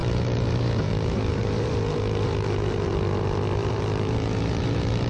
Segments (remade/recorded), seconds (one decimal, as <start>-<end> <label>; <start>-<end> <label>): 0.0-2.9 remade; 2.9-3.6 recorded; 3.6-5.1 remade